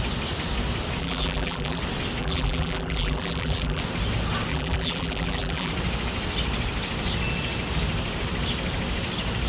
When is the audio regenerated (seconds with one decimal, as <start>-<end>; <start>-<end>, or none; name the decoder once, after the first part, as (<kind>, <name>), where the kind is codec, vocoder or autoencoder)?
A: 1.0-1.8 (vocoder, BigVGAN v2); 2.2-3.8; 4.5-5.7